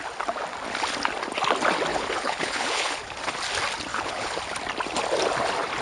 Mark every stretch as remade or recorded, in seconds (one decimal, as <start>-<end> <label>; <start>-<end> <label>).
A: 0.0-1.9 recorded; 1.9-3.0 remade; 3.0-3.9 recorded; 3.9-4.4 remade; 4.4-5.8 recorded